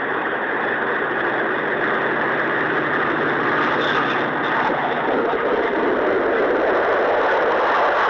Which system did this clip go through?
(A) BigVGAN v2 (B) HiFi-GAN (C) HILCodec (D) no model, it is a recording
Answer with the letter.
D